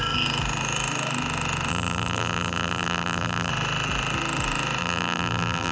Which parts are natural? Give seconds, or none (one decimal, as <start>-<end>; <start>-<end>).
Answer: 0.0-1.7; 3.5-4.8